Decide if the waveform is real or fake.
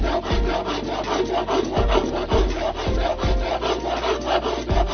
real